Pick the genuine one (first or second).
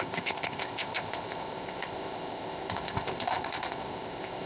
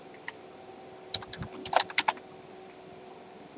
second